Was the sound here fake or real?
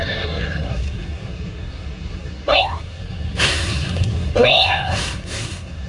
fake